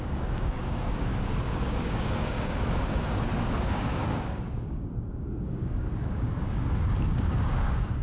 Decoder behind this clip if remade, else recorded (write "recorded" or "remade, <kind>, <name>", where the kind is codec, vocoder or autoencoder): remade, codec, DAC